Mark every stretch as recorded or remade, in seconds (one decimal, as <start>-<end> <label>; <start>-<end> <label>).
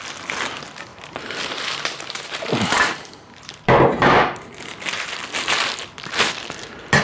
0.0-0.9 recorded; 0.9-5.1 remade; 5.1-7.0 recorded